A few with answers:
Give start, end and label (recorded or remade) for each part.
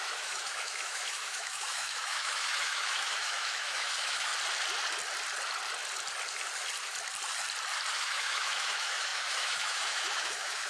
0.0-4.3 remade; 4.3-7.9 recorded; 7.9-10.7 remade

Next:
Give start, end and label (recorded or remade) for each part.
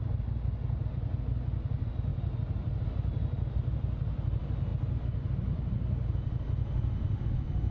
0.0-7.7 recorded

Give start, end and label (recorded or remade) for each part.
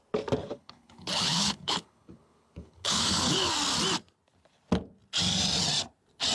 0.0-0.4 recorded; 0.4-3.5 remade; 3.5-6.3 recorded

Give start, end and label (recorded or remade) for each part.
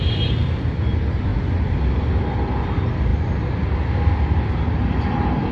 0.0-5.5 recorded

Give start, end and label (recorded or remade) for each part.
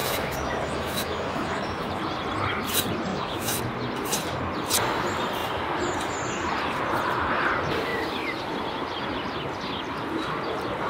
0.0-1.9 remade; 1.9-3.1 recorded; 3.1-3.6 remade; 3.6-10.9 recorded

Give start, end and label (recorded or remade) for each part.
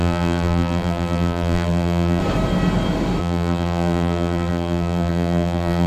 0.0-2.2 remade; 2.2-3.2 recorded; 3.2-5.9 remade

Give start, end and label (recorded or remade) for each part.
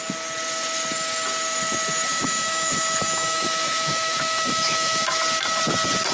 0.0-2.1 recorded; 2.1-5.2 remade; 5.2-6.1 recorded